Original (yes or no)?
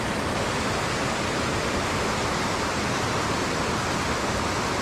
yes